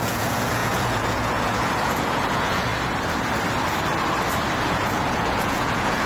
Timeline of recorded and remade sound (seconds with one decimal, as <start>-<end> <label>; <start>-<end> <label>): 0.0-2.7 remade; 2.7-4.6 recorded; 4.6-6.1 remade